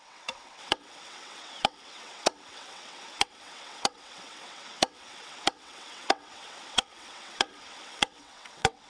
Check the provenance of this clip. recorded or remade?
remade